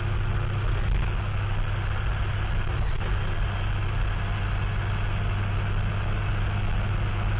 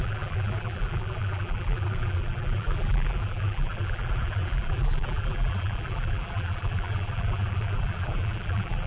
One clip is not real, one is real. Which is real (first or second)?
first